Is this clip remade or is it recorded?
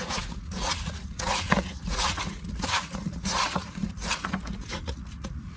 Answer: remade